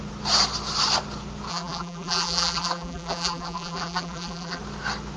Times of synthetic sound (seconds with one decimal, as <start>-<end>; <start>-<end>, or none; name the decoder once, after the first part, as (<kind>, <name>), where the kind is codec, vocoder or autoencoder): 1.5-4.6 (vocoder, BigVGAN v2)